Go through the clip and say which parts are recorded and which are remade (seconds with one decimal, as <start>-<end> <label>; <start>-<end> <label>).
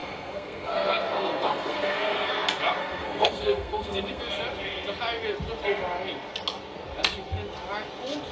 0.0-2.3 remade; 2.3-2.8 recorded; 2.8-4.2 remade; 4.2-8.3 recorded